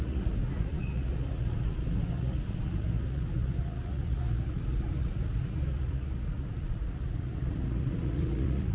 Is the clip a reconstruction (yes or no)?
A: yes